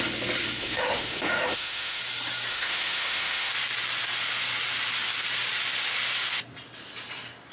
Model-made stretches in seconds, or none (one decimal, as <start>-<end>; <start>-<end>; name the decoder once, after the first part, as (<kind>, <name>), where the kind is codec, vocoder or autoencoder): 0.6-2.0 (autoencoder, DAC-VAE); 2.5-3.5